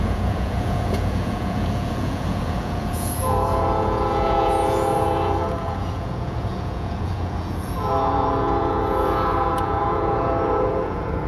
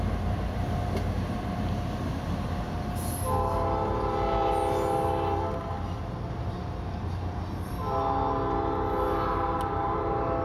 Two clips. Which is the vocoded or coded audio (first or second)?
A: first